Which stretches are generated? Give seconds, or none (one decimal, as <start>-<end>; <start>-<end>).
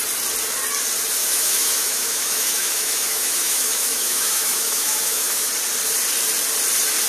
1.2-5.5